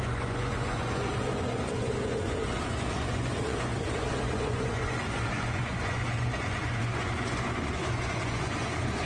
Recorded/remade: remade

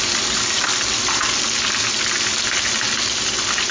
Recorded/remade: recorded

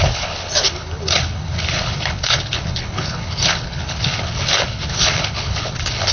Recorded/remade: remade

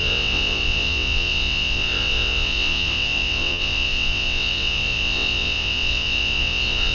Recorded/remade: remade